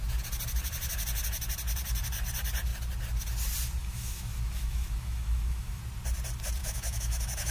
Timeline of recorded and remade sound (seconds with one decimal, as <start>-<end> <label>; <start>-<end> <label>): 0.0-3.8 recorded; 3.8-5.8 remade; 5.8-6.6 recorded; 6.6-7.5 remade